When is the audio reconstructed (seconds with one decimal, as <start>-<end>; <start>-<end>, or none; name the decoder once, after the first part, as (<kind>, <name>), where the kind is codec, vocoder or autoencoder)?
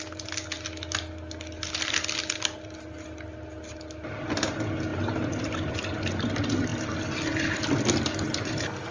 none